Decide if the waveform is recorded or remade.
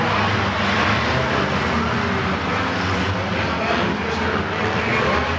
recorded